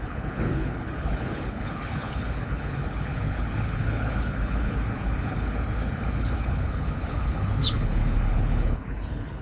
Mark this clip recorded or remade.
remade